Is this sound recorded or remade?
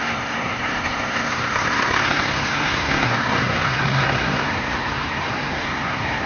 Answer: remade